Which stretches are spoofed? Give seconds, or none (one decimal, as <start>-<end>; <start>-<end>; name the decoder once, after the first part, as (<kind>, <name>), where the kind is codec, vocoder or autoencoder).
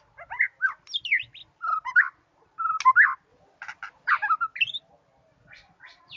none